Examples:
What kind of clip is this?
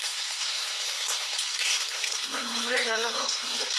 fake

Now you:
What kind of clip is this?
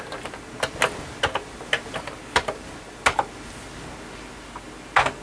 real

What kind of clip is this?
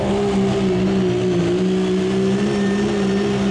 real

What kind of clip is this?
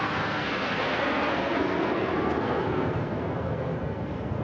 fake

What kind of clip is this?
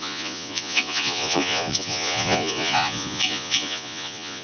fake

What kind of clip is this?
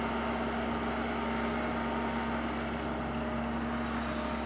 real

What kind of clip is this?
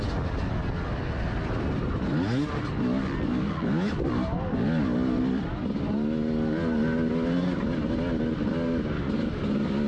real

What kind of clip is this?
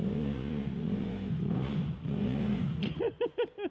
fake